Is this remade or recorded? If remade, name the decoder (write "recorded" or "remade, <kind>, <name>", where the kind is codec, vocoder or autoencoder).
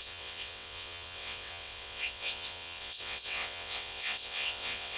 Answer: remade, vocoder, WaveNeXt